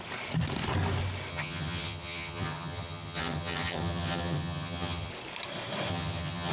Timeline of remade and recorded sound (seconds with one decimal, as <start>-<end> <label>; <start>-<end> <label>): 0.0-1.3 recorded; 1.3-5.1 remade; 5.1-5.9 recorded; 5.9-6.5 remade